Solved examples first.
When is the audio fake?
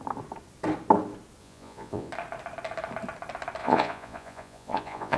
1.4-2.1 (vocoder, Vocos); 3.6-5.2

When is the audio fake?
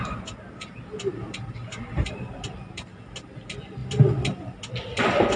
none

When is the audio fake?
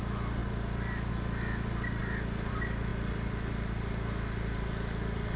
none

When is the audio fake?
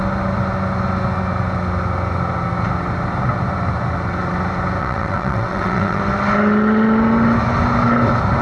4.8-6.0 (vocoder, WaveNeXt)